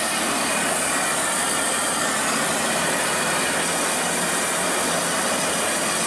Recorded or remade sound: recorded